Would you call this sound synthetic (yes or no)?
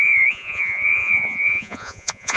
yes